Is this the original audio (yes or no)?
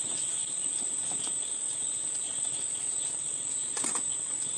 yes